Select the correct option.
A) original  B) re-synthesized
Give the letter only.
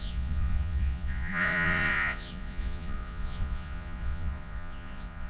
B